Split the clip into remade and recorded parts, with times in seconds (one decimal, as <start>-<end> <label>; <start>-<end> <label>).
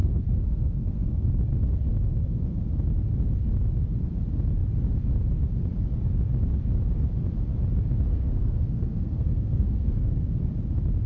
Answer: 0.0-1.3 remade; 1.3-8.1 recorded; 8.1-10.6 remade; 10.6-11.1 recorded